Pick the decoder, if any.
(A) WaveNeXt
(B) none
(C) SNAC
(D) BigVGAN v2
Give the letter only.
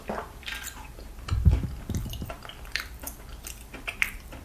D